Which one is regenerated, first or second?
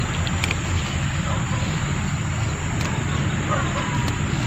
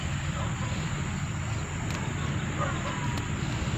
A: first